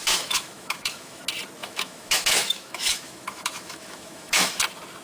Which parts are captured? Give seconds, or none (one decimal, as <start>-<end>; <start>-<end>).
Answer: 1.2-1.6; 4.6-5.0